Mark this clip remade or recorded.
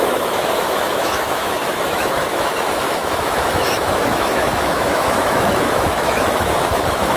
remade